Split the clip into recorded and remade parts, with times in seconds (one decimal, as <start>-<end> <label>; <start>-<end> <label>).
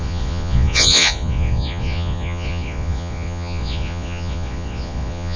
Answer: 0.0-5.4 remade